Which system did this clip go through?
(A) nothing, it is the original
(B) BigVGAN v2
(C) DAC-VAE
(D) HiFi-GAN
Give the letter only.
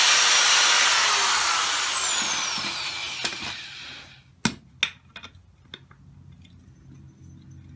A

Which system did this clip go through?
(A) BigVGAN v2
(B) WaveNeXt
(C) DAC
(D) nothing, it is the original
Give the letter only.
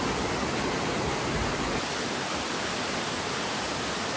A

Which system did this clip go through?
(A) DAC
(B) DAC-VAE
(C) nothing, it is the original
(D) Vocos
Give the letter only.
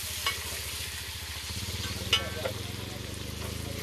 C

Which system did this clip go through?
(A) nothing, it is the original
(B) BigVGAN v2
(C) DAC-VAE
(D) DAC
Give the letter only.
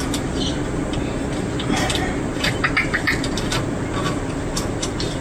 A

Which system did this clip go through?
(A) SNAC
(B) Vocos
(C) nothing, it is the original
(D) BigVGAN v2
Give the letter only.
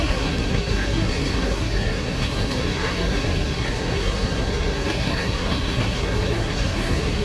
A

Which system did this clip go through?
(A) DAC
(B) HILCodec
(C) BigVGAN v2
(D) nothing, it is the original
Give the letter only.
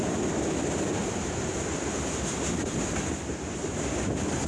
C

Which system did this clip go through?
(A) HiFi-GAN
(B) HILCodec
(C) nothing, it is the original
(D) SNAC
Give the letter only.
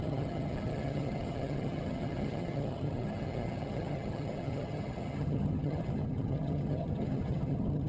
A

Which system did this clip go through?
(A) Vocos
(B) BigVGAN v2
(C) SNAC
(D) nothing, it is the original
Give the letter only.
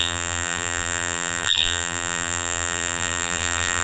B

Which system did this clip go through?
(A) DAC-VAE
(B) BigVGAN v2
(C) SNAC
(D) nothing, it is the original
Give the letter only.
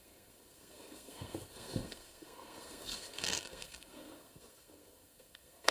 C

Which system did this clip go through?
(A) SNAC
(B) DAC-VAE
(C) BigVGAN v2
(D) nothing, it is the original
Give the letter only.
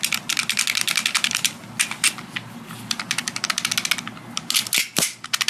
D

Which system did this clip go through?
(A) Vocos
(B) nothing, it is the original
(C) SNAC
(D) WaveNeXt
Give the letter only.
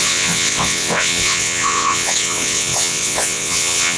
D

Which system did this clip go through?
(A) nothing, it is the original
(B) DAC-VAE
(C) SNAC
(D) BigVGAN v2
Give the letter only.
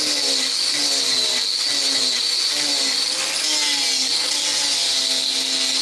A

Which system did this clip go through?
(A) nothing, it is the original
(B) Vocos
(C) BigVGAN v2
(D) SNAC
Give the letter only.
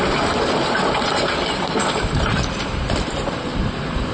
A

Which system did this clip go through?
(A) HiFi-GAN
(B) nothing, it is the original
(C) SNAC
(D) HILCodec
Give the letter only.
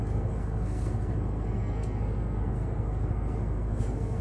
C